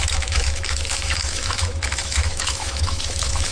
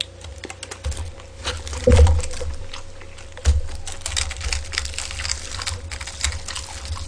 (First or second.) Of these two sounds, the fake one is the first